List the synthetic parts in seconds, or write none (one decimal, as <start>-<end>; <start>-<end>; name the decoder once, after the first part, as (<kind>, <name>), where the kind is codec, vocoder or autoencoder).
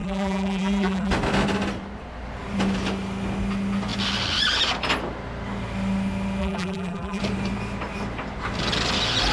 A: 0.0-1.1 (vocoder, BigVGAN v2); 6.4-7.2